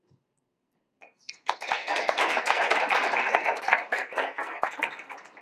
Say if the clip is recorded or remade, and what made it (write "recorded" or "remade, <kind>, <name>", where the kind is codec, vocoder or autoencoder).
remade, codec, SNAC